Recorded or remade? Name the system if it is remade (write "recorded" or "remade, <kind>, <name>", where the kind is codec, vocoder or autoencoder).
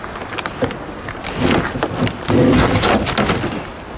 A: recorded